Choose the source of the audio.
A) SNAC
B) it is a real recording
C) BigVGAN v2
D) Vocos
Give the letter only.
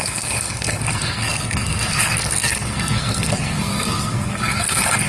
A